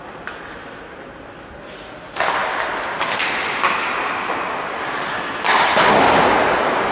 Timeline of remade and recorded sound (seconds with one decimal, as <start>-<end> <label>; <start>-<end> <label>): 0.0-6.9 recorded